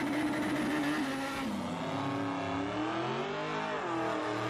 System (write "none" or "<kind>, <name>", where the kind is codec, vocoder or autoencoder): none